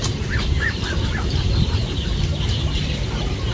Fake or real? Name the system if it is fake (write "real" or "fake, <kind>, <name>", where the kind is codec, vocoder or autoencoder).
real